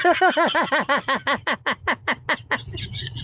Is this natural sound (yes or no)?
yes